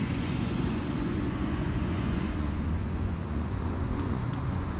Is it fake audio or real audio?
fake